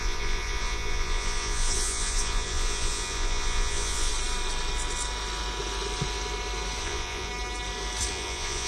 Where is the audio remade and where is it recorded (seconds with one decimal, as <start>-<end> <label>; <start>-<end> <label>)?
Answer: 0.0-4.1 remade; 4.1-6.8 recorded; 6.8-7.3 remade; 7.3-8.1 recorded; 8.1-8.7 remade